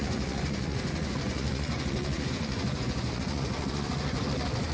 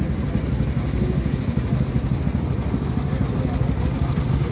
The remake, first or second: first